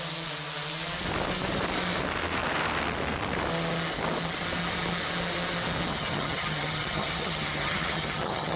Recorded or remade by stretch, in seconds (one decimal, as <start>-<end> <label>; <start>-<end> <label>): 0.0-5.9 recorded; 5.9-8.6 remade